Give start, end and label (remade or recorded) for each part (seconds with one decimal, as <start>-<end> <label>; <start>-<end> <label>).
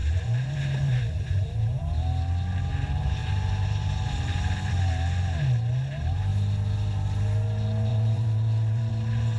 0.0-1.8 remade; 1.8-3.2 recorded; 3.2-4.9 remade; 4.9-7.9 recorded; 7.9-8.9 remade; 8.9-9.4 recorded